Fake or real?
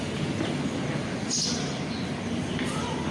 real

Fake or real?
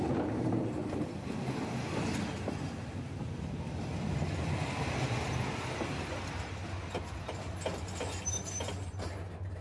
real